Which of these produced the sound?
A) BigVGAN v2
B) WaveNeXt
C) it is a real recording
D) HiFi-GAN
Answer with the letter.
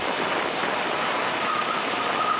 C